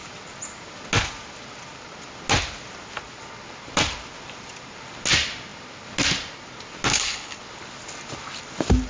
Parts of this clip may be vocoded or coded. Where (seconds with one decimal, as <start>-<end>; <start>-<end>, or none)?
6.9-7.4